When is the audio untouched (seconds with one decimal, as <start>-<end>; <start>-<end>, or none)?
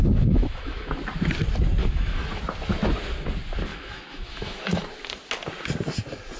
0.9-1.8; 2.4-3.7; 4.8-6.4